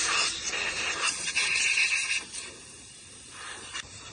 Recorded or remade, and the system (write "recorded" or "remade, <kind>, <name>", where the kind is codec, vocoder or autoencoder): remade, vocoder, BigVGAN v2